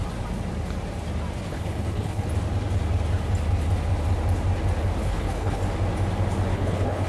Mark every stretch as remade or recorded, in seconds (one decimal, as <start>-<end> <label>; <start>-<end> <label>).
0.0-1.5 recorded; 1.5-2.3 remade; 2.3-5.0 recorded; 5.0-5.6 remade; 5.6-6.5 recorded; 6.5-7.1 remade